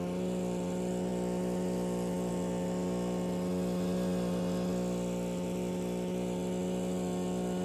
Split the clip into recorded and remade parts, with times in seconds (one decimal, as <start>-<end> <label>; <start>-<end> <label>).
0.0-7.6 recorded